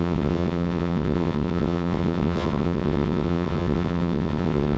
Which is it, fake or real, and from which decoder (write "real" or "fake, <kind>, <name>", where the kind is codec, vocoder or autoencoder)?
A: fake, vocoder, WaveNeXt